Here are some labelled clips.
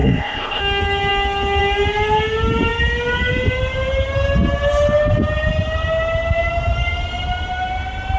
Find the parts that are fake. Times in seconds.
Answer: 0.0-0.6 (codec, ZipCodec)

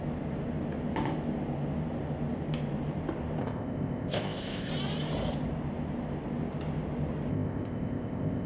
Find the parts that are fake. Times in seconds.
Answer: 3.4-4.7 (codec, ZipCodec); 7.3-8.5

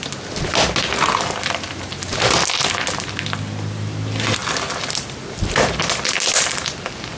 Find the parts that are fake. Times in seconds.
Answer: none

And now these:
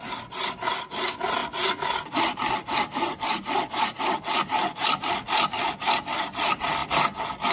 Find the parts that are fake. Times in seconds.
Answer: none

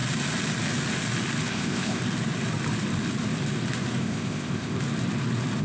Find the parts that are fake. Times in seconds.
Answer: 1.5-2.0 (codec, ZipCodec); 4.0-4.8